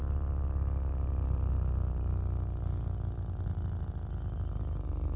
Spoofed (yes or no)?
no